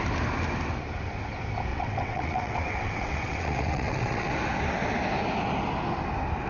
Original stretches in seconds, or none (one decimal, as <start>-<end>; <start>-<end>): 0.0-1.7; 4.3-6.5